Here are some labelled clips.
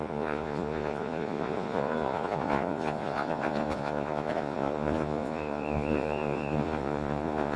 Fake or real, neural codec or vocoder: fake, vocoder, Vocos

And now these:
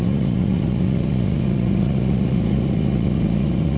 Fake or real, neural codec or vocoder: fake, vocoder, Vocos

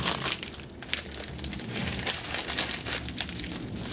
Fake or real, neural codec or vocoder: real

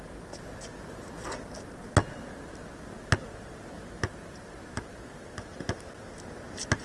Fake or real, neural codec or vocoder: real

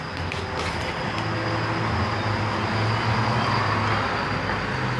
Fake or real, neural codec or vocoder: real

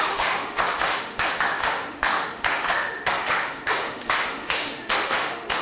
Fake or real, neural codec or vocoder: fake, autoencoder, DAC-VAE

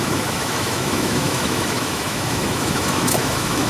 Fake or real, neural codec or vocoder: fake, autoencoder, DAC-VAE